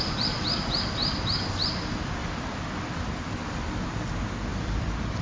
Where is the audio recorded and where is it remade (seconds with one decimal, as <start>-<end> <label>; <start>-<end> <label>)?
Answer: 0.0-2.2 recorded; 2.2-4.0 remade; 4.0-4.5 recorded; 4.5-5.2 remade